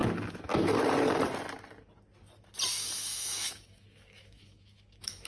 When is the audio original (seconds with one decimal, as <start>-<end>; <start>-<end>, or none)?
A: 0.0-2.7